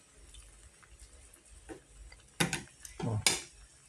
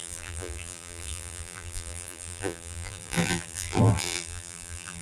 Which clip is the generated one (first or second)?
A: second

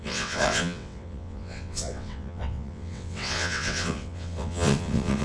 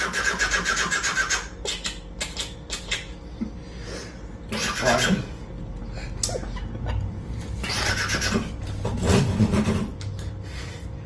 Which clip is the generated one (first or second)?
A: first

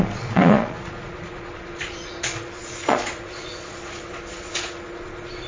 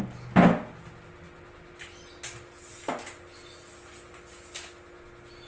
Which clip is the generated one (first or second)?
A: first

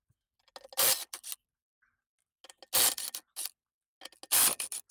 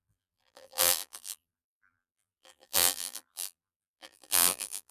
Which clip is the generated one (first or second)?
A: second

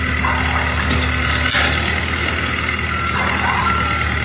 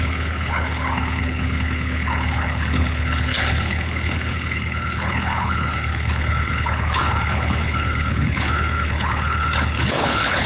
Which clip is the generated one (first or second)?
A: second